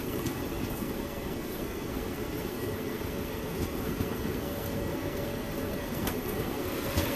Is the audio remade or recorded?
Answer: remade